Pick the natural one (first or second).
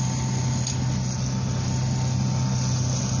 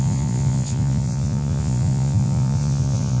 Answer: first